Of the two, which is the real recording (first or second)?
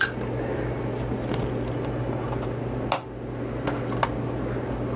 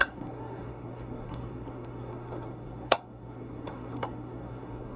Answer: first